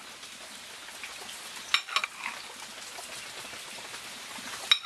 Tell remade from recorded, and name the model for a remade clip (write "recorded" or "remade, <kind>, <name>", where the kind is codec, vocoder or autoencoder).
recorded